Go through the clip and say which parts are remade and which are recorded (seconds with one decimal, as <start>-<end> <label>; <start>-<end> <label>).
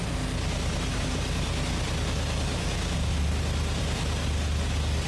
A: 0.0-5.1 remade